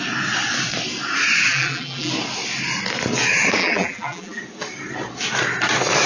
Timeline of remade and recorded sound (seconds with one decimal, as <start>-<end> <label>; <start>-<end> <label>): 0.0-1.5 recorded; 1.5-2.1 remade; 2.1-3.6 recorded; 3.6-4.4 remade; 4.4-6.1 recorded